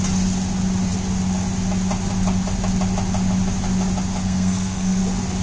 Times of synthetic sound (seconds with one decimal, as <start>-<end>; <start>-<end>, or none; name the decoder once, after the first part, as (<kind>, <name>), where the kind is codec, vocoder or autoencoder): 4.2-5.0 (codec, SNAC)